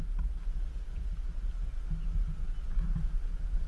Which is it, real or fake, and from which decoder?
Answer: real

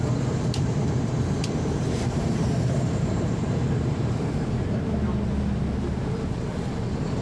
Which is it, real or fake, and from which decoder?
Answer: fake, vocoder, BigVGAN v2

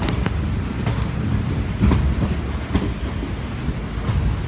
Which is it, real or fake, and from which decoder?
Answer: fake, vocoder, BigVGAN v2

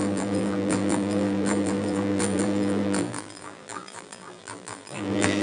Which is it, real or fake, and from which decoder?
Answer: fake, vocoder, BigVGAN v2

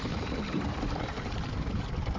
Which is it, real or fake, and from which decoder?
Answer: fake, vocoder, BigVGAN v2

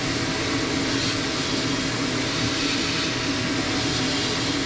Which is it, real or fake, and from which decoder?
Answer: real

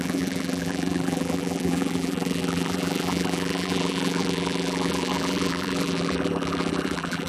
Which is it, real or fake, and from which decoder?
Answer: fake, vocoder, BigVGAN v2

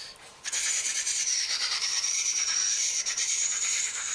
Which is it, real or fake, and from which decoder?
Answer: fake, vocoder, BigVGAN v2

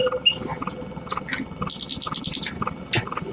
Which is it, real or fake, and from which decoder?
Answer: real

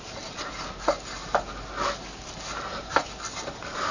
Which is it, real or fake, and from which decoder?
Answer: real